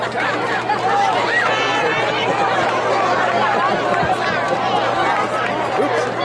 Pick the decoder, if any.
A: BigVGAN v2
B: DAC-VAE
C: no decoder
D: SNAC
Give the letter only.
C